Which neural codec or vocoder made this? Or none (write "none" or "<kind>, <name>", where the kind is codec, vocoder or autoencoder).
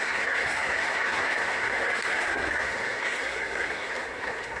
codec, SNAC